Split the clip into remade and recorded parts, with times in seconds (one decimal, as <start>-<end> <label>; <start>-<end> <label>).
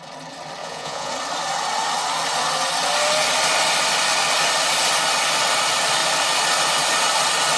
0.0-0.6 recorded; 0.6-1.1 remade; 1.1-7.6 recorded